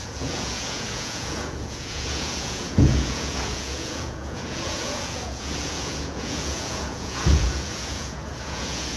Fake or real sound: fake